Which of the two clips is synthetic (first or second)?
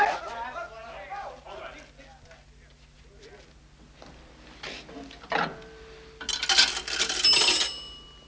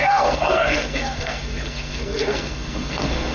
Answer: second